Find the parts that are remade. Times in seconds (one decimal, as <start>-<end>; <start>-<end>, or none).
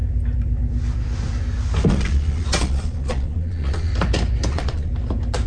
1.9-3.9; 4.5-4.9